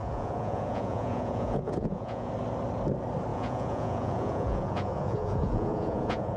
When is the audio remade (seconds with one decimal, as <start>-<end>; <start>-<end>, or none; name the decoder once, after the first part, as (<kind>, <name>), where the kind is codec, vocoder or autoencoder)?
0.0-2.3 (vocoder, Vocos); 3.3-6.4